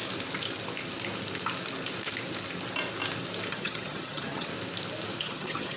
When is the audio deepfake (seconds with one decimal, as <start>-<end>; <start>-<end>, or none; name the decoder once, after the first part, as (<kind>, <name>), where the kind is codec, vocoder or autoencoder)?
3.5-4.5 (vocoder, HiFi-GAN); 5.2-5.8